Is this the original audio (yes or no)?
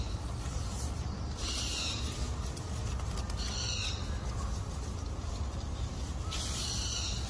yes